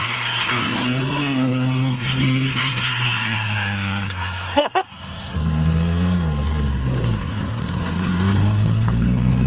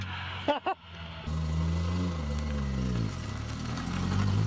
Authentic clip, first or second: second